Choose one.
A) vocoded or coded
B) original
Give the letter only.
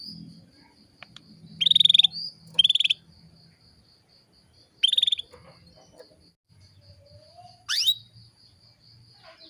B